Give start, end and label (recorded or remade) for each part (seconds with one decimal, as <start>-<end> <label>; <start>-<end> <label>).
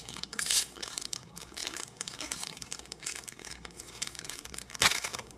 0.0-5.4 remade